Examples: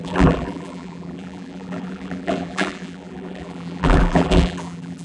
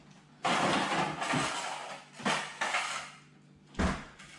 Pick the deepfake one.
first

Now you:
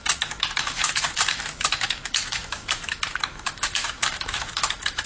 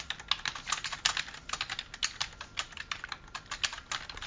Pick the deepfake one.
first